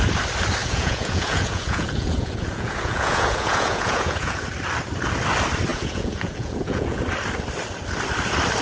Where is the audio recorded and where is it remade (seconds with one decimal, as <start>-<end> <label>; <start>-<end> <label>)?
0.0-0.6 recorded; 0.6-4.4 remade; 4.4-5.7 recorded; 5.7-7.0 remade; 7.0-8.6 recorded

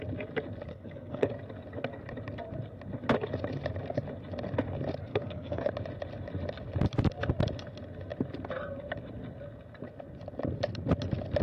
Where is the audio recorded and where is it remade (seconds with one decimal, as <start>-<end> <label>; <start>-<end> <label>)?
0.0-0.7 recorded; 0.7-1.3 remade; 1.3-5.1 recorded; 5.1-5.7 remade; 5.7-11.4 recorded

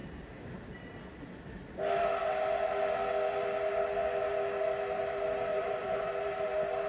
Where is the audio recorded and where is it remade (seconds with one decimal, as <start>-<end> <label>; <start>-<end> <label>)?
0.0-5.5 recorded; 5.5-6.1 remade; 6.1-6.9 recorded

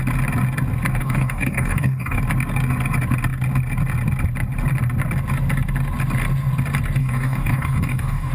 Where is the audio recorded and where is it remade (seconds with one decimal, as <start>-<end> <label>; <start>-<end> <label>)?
0.0-1.0 recorded; 1.0-2.2 remade; 2.2-7.0 recorded; 7.0-8.3 remade

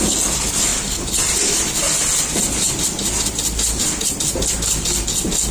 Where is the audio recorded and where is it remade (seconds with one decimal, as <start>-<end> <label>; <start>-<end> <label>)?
0.0-5.5 recorded

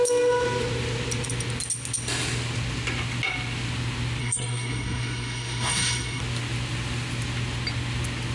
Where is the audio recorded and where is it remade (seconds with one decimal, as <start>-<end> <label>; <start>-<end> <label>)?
0.0-4.2 recorded; 4.2-6.2 remade; 6.2-8.3 recorded

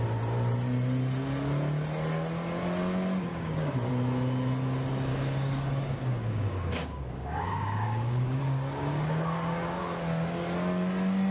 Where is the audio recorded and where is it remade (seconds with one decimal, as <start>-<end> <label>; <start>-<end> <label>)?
0.0-3.3 recorded; 3.3-3.9 remade; 3.9-5.1 recorded; 5.1-9.8 remade; 9.8-11.3 recorded